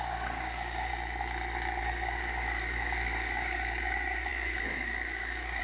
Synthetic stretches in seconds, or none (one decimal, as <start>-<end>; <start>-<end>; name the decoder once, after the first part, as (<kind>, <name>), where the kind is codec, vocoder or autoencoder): 0.0-0.9 (codec, DAC); 1.8-5.6